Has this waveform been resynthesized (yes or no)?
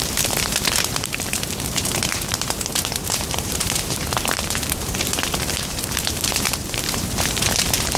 yes